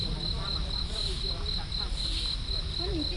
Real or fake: real